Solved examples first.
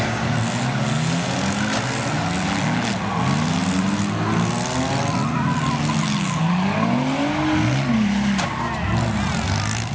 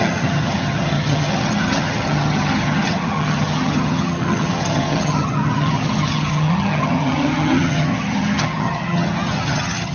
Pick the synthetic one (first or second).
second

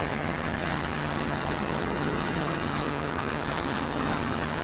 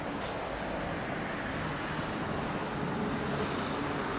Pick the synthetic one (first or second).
first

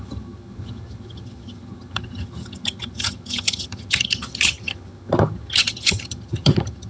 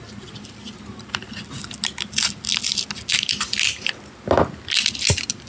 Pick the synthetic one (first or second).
first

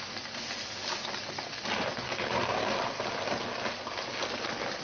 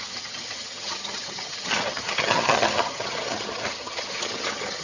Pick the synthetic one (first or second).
second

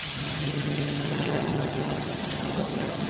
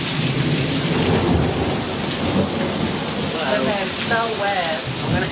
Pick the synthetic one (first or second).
first